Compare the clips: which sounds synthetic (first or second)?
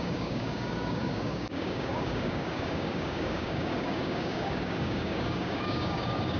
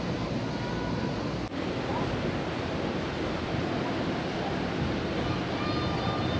first